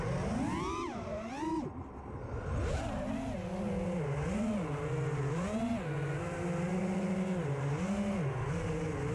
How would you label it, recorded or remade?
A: recorded